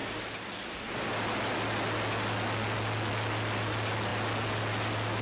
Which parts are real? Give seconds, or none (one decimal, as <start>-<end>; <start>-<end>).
0.0-5.2